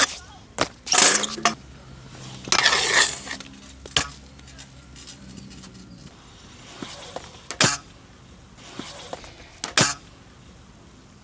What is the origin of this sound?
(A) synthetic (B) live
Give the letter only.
B